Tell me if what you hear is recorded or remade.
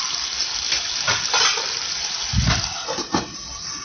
recorded